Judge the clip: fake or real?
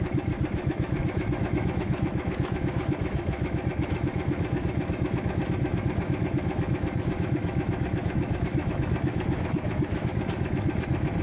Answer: fake